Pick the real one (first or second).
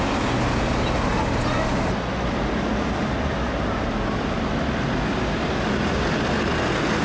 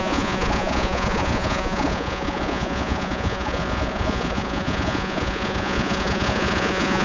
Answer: first